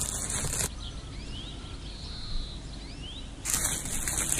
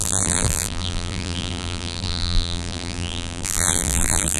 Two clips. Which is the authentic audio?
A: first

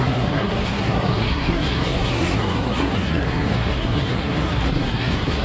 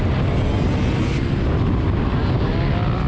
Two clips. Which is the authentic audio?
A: second